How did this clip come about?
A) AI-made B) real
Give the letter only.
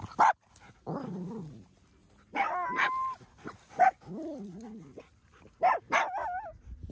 B